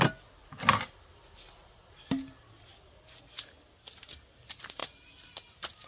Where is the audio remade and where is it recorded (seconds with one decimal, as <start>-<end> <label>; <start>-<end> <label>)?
0.0-5.9 recorded